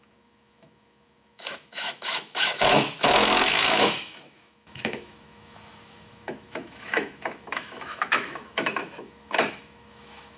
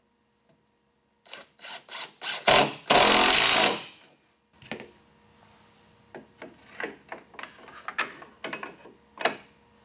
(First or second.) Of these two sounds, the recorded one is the second